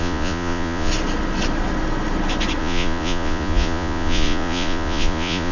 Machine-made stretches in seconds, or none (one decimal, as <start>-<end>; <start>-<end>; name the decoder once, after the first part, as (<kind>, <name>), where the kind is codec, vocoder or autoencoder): 0.0-0.9 (vocoder, Vocos); 2.6-5.5